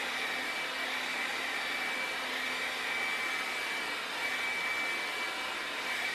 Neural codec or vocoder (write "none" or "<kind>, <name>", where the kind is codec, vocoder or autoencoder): none